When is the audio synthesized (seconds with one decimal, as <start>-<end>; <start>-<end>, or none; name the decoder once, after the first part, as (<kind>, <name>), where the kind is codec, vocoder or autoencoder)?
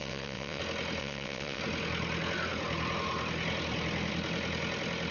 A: 0.0-0.6 (vocoder, WaveNeXt); 1.0-1.6